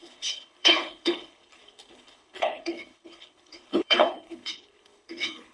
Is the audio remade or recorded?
remade